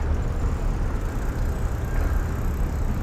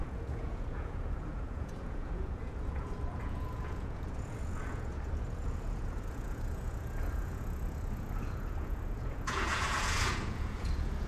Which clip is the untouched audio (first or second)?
first